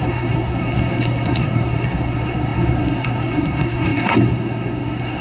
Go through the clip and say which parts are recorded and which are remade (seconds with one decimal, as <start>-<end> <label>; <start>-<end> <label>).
0.0-5.2 remade